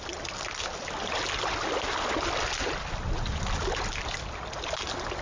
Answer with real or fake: real